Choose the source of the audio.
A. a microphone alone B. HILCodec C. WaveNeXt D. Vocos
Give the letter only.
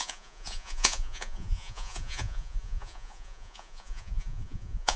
D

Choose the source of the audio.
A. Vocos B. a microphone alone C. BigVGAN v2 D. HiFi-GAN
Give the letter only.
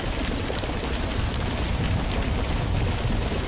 B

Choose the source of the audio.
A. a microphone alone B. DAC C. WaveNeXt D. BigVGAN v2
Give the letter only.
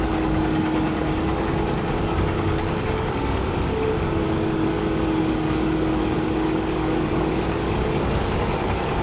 B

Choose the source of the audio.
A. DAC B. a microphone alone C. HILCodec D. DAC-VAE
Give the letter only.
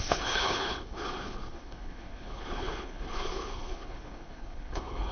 C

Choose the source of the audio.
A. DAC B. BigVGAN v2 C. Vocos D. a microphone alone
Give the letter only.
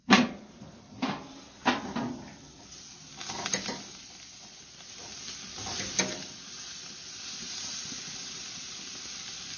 D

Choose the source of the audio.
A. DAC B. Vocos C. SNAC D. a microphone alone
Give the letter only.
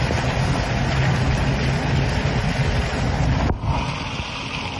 D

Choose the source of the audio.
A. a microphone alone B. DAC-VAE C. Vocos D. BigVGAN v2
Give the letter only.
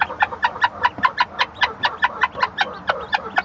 A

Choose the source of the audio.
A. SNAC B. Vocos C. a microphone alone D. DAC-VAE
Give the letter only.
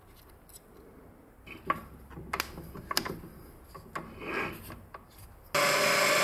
C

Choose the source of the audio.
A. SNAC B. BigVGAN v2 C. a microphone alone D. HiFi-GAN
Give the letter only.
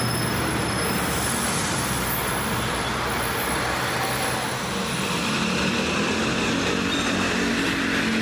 C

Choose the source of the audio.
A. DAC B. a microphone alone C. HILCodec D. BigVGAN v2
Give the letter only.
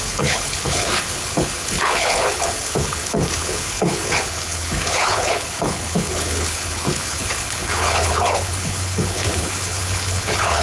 C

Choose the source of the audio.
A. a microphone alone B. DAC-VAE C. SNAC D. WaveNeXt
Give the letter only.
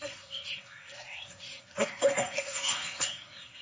C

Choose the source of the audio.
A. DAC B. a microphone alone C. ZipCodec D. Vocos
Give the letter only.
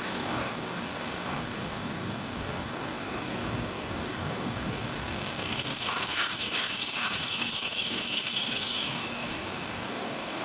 A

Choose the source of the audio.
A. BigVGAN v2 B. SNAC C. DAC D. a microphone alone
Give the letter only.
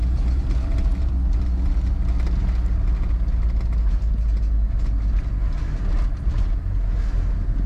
D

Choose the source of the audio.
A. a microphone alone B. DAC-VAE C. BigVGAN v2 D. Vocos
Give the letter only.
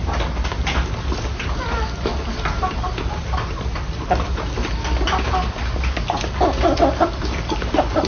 A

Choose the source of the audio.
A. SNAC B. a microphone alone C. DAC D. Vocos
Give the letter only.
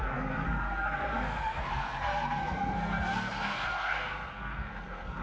A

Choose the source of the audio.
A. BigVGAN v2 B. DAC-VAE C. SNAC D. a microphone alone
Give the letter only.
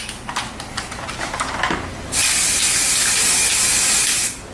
D